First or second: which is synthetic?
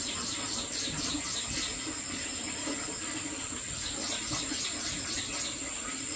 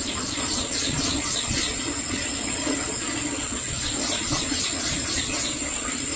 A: second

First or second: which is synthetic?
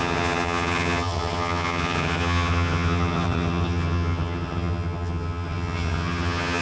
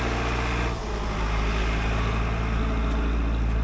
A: first